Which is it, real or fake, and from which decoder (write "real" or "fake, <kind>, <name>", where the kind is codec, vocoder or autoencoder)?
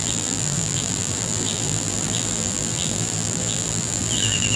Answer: fake, vocoder, BigVGAN v2